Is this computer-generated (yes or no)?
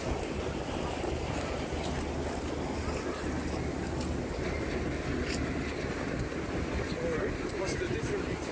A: no